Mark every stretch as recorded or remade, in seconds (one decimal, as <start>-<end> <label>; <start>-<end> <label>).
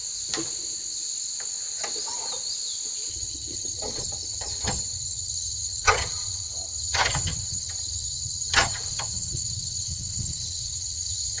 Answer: 0.0-3.1 recorded; 3.1-11.4 remade